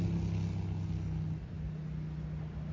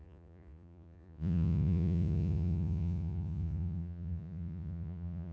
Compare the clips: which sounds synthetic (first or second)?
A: second